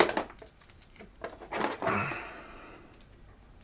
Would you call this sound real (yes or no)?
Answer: yes